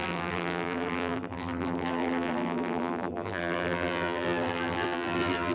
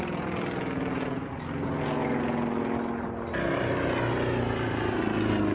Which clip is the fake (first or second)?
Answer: first